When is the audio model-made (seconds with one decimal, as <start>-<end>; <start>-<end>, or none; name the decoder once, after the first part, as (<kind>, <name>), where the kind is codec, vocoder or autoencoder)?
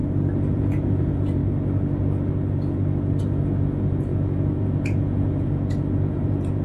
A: 0.5-1.4 (vocoder, Vocos); 3.2-6.6